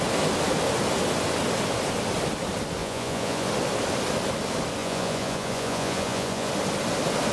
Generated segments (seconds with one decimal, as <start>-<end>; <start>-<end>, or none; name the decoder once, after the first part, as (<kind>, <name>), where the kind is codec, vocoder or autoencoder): 2.8-3.5 (vocoder, Vocos); 4.8-6.5

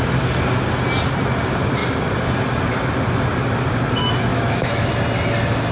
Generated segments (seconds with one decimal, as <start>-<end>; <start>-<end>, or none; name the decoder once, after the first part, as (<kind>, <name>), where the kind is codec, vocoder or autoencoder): 4.3-4.9 (autoencoder, DAC-VAE)

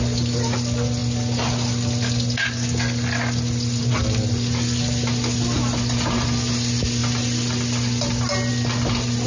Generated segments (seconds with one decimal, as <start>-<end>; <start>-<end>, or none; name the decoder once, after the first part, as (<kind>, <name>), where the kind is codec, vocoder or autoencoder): none

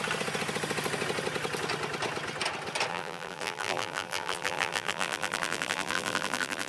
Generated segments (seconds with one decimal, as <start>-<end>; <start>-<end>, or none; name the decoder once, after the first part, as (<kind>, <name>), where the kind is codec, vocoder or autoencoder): 2.9-6.7 (vocoder, BigVGAN v2)

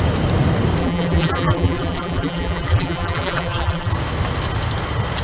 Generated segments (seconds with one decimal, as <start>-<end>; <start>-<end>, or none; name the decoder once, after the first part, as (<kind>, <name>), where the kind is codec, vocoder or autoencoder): 0.8-3.9 (vocoder, BigVGAN v2)